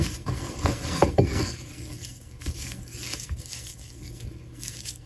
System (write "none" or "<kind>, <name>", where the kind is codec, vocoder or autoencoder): codec, SNAC